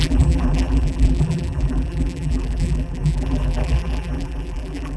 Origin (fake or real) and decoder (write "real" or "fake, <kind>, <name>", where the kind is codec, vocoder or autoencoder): fake, vocoder, BigVGAN v2